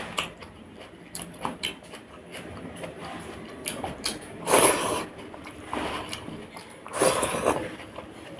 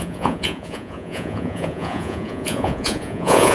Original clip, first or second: first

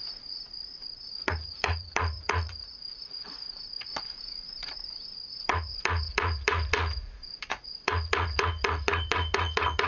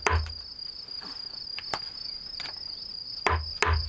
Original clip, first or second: second